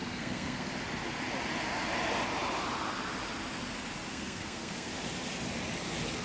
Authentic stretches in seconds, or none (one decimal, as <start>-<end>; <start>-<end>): 0.7-4.1; 4.9-6.2